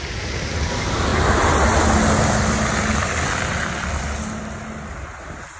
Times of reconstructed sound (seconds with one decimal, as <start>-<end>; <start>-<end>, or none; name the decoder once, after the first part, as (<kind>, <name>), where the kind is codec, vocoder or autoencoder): none